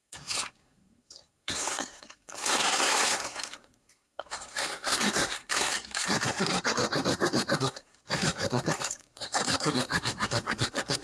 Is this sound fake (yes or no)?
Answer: yes